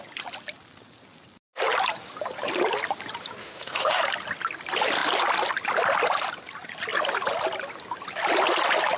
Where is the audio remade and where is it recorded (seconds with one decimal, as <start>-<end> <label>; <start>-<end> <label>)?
0.0-3.4 recorded; 3.4-4.0 remade; 4.0-9.0 recorded